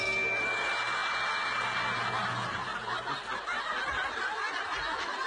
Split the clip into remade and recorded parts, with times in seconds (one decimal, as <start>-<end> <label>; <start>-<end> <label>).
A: 0.0-5.3 recorded

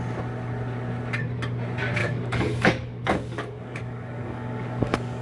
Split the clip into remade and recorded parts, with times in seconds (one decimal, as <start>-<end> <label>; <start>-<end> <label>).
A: 0.0-2.0 recorded; 2.0-5.2 remade

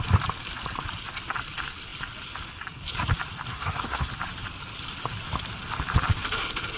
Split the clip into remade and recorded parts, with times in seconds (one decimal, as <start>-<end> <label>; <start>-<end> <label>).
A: 0.0-3.5 recorded; 3.5-4.1 remade; 4.1-6.8 recorded

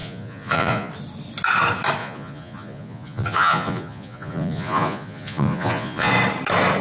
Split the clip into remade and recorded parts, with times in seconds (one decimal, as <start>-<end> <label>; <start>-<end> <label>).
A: 0.0-0.9 remade; 0.9-2.0 recorded; 2.0-6.1 remade; 6.1-6.8 recorded

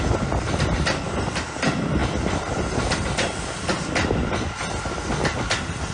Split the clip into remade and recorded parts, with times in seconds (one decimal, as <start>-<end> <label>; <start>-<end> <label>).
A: 0.0-5.9 recorded

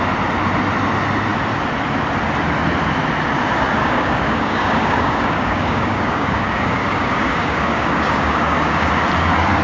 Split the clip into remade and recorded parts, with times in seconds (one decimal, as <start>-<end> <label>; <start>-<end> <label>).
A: 0.0-3.8 recorded; 3.8-8.9 remade; 8.9-9.6 recorded

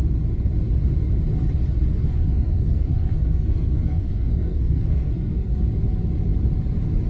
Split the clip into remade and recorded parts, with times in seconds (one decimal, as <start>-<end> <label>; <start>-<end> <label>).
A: 0.0-1.9 recorded; 1.9-5.6 remade; 5.6-7.1 recorded

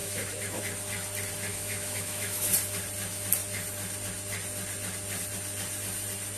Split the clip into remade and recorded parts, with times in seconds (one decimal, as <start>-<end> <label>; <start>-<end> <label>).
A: 0.0-0.6 remade; 0.6-1.5 recorded; 1.5-2.5 remade; 2.5-6.4 recorded